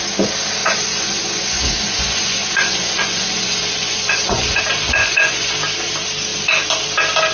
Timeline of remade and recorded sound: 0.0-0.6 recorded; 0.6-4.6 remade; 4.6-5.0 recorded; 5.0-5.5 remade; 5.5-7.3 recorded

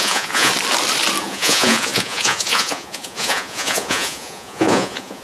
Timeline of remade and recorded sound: 0.0-0.5 remade; 0.5-1.2 recorded; 1.2-5.2 remade

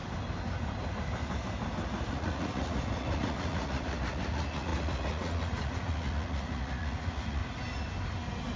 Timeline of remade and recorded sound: 0.0-2.1 recorded; 2.1-7.4 remade; 7.4-8.6 recorded

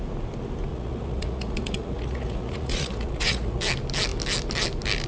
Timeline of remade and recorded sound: 0.0-0.7 recorded; 0.7-3.6 remade; 3.6-5.1 recorded

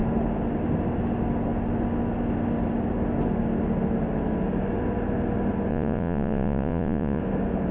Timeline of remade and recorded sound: 0.0-5.7 recorded; 5.7-7.2 remade; 7.2-7.7 recorded

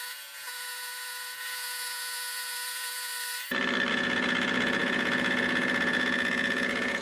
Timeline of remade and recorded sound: 0.0-3.1 remade; 3.1-3.9 recorded; 3.9-7.0 remade